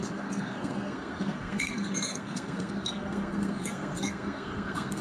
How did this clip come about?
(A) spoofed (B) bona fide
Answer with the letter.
A